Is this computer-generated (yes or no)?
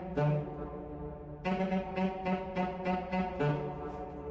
no